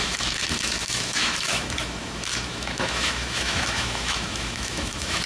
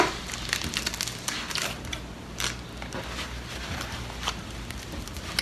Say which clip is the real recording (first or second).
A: second